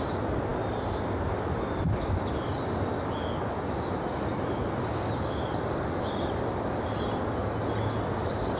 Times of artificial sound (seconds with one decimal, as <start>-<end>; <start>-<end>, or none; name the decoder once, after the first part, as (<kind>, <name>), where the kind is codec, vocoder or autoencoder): none